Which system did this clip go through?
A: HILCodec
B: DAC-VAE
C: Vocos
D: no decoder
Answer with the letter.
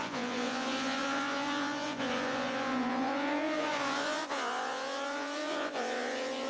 C